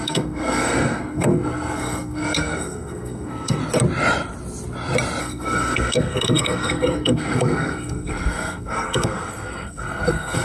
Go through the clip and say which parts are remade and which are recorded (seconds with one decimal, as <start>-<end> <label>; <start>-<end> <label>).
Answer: 0.0-3.6 remade; 3.6-5.2 recorded; 5.2-10.4 remade